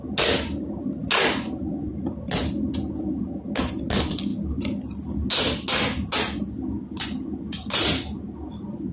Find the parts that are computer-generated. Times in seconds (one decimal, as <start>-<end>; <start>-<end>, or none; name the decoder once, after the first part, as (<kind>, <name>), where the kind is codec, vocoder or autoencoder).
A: none